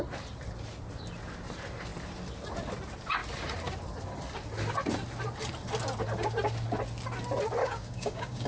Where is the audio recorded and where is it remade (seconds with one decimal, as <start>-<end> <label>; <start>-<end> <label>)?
0.0-7.6 recorded; 7.6-8.5 remade